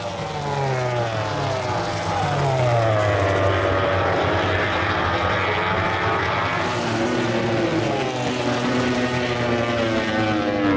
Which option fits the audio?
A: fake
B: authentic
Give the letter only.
B